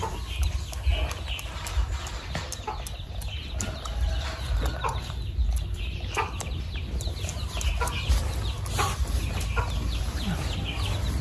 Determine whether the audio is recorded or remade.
recorded